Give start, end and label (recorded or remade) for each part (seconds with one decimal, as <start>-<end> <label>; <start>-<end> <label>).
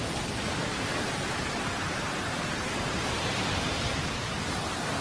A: 0.0-5.0 remade